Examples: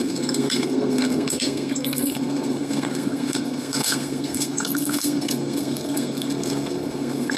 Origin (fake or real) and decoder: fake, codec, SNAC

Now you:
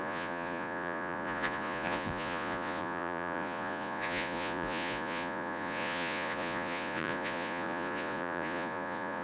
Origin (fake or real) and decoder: fake, vocoder, Vocos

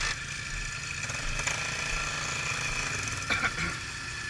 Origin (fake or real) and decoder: real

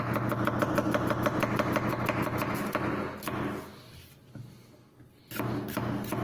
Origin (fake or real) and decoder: real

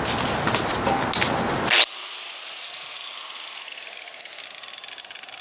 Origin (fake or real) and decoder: real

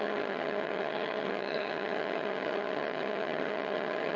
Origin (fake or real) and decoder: fake, vocoder, HiFi-GAN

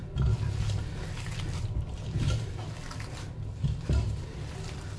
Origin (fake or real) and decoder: real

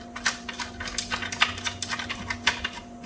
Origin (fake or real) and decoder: real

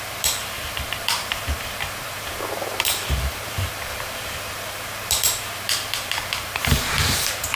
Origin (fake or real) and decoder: fake, vocoder, BigVGAN v2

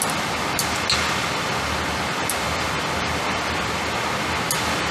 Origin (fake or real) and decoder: real